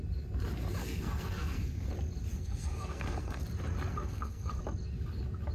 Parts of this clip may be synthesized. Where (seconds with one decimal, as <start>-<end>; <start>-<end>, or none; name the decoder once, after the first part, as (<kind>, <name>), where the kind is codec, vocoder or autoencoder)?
0.8-1.9 (codec, SNAC); 2.3-3.4; 3.9-4.5